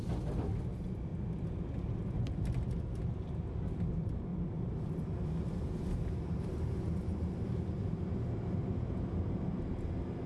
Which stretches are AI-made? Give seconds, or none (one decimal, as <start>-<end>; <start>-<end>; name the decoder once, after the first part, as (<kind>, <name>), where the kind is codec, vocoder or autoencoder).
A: 1.1-3.5 (vocoder, BigVGAN v2); 4.3-7.8